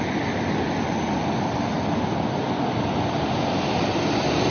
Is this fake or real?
real